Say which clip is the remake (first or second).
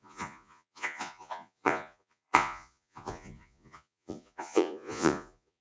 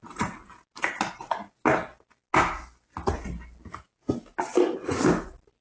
first